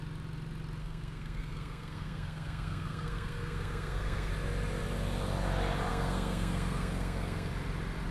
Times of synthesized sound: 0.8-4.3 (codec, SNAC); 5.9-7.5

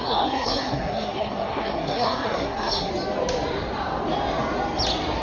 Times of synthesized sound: 0.0-2.9 (codec, SNAC)